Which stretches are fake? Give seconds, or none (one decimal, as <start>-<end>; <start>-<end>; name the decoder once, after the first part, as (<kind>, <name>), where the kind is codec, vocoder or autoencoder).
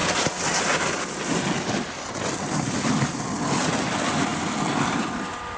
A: none